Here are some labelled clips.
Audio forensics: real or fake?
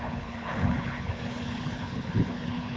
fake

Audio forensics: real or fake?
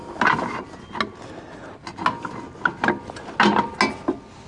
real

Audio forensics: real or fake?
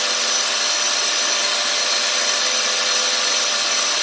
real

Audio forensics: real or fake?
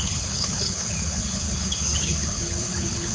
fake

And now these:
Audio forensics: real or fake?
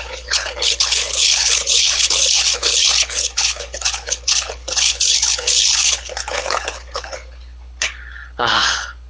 fake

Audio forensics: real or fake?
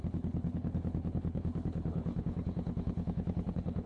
fake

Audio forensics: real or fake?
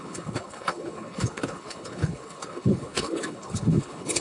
fake